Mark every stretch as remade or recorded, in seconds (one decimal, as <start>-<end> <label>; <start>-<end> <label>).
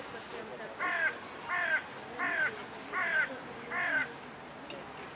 0.0-5.2 recorded